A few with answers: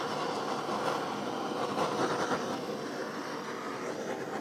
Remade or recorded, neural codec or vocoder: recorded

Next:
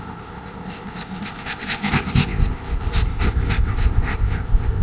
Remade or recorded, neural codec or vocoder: remade, codec, ZipCodec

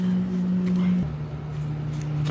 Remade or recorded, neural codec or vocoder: recorded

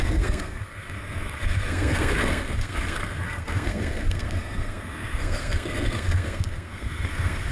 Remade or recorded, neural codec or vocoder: remade, codec, SNAC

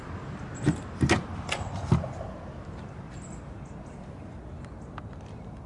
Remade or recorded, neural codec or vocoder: recorded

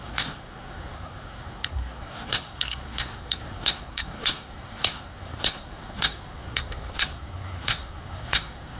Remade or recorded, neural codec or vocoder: remade, codec, SNAC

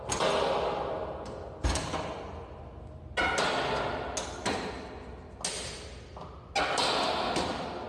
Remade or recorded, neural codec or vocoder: recorded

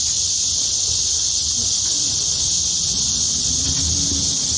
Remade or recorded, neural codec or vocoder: recorded